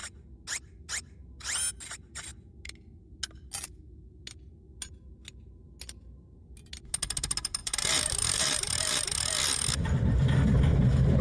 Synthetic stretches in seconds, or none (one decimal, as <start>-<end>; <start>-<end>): 7.6-8.7